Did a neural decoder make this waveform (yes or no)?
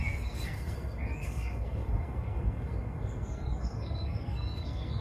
yes